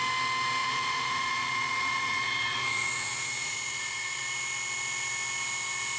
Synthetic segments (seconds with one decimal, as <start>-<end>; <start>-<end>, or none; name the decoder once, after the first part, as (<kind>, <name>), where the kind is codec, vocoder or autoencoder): 0.6-4.2 (vocoder, Vocos)

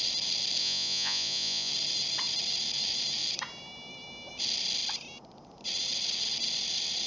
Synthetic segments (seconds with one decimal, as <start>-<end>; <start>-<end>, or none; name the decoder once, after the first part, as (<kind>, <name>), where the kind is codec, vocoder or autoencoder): 0.6-1.7 (vocoder, Vocos)

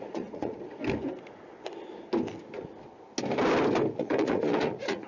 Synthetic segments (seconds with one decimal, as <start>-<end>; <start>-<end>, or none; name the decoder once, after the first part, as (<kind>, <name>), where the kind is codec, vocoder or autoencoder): 0.0-0.8 (vocoder, Vocos); 3.9-5.1

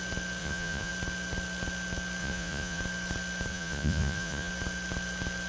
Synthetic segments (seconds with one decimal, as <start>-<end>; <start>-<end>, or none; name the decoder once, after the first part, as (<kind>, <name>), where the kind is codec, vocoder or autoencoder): 0.4-0.9 (vocoder, Vocos); 2.2-2.8; 3.5-4.5

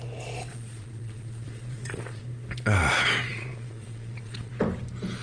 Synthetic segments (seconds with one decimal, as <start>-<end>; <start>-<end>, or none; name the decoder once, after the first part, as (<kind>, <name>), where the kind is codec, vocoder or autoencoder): 0.5-2.2 (vocoder, Vocos); 3.3-4.5

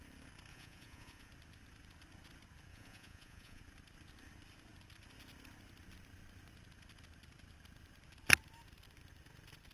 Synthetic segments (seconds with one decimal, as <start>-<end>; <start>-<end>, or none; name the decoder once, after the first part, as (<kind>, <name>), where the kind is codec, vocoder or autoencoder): 0.5-1.3 (vocoder, Vocos); 2.7-3.6

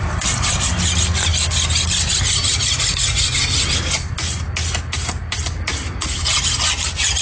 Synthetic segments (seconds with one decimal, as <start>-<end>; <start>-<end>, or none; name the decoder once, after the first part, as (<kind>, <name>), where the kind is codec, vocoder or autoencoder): none

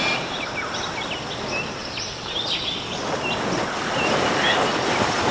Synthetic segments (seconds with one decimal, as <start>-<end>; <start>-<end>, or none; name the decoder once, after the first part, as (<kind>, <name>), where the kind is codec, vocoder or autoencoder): none